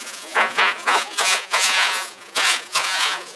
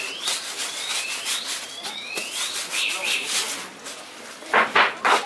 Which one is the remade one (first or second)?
first